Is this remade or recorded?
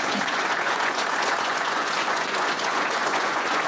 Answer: remade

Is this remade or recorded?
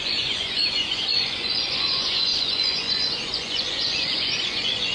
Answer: remade